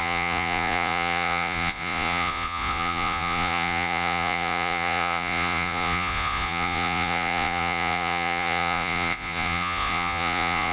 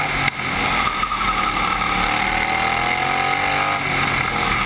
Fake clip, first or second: first